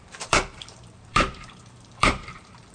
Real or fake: fake